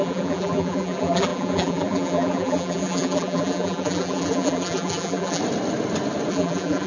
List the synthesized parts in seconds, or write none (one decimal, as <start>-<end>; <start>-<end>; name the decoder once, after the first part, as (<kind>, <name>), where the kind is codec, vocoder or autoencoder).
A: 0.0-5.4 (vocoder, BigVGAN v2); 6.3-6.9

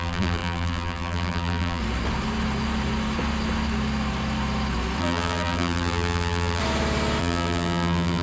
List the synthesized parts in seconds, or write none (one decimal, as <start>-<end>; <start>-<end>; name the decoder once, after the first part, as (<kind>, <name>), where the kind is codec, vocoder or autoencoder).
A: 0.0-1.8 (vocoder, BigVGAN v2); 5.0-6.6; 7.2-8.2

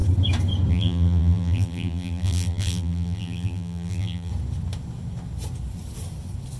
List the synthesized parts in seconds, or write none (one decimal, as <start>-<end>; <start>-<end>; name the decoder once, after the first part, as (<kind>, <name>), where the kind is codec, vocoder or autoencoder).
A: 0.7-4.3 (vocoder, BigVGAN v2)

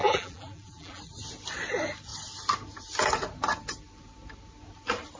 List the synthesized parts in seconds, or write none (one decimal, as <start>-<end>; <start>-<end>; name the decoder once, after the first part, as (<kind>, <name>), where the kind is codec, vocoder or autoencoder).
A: 0.0-1.0 (vocoder, BigVGAN v2)

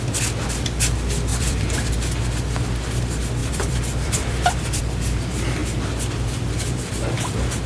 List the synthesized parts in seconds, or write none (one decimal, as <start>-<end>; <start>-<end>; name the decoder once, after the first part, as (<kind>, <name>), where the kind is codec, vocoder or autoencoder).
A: 1.3-1.9 (vocoder, BigVGAN v2); 3.4-4.8